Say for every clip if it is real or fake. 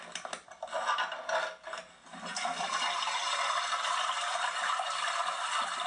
real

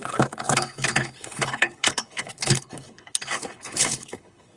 fake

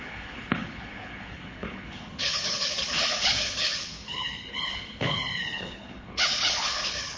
fake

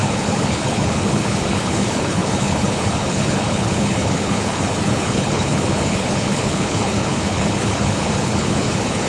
fake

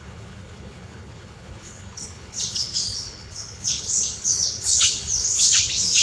fake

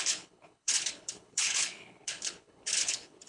fake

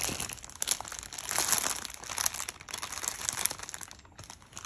real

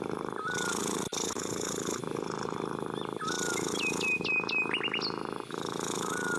real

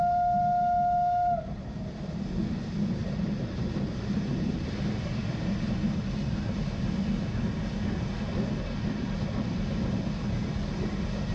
real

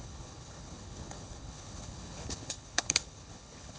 fake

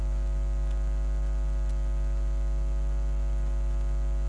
real